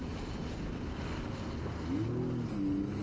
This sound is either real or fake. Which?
real